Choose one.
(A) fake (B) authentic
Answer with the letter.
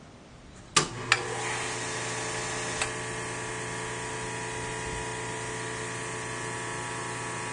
B